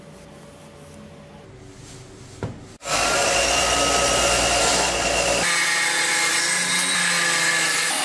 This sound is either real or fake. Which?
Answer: real